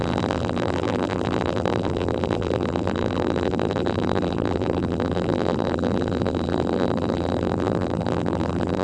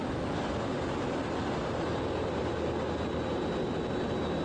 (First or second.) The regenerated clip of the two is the first